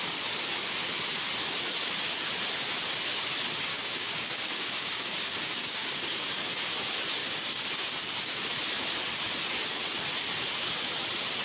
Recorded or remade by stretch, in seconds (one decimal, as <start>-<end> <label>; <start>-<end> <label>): 0.0-3.7 recorded; 3.7-6.6 remade; 6.6-7.2 recorded; 7.2-8.5 remade; 8.5-11.4 recorded